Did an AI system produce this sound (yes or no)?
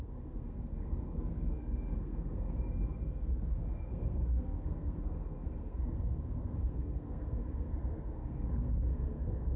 yes